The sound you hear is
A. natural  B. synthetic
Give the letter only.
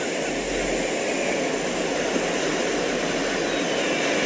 A